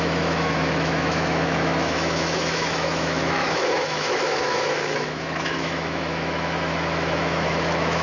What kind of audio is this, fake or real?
fake